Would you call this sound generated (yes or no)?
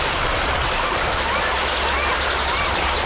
no